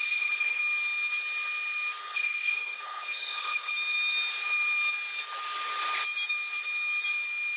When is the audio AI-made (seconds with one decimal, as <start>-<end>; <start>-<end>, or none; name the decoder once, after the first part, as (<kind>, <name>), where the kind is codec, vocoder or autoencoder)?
0.0-0.6 (codec, HILCodec); 2.0-3.7

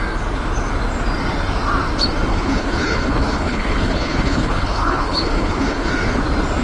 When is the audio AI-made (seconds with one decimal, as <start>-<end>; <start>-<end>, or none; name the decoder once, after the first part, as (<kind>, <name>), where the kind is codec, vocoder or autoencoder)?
2.3-5.9 (codec, HILCodec)

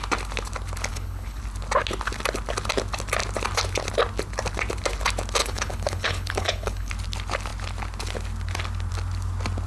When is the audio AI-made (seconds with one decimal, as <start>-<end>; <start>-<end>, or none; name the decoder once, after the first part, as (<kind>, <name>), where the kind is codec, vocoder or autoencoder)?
0.9-1.4 (codec, HILCodec); 5.4-6.9

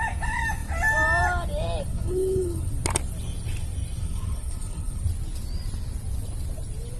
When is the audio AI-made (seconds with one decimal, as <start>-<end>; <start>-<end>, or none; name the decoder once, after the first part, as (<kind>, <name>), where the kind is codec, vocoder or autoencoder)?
1.9-2.7 (codec, HILCodec); 4.0-5.0

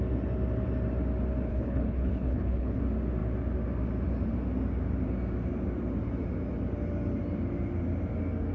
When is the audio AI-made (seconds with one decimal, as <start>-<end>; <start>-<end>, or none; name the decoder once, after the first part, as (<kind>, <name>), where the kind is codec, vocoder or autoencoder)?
1.5-2.8 (codec, HILCodec)

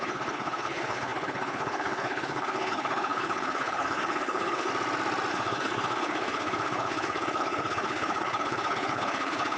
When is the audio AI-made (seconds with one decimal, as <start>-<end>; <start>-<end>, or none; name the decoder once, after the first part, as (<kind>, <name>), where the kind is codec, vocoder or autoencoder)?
0.0-4.7 (codec, HILCodec); 5.3-9.6

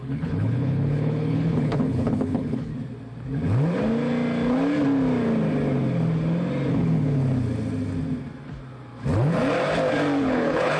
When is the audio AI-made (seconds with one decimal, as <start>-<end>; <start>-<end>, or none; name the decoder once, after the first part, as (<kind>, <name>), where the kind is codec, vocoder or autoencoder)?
0.0-2.7 (codec, HILCodec); 6.7-7.2; 10.2-10.8